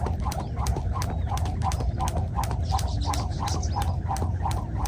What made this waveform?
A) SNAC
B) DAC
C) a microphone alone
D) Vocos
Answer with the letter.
C